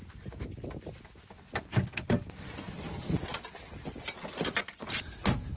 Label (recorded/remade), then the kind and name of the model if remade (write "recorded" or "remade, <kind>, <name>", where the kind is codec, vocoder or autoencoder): recorded